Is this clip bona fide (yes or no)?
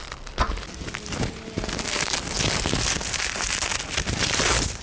yes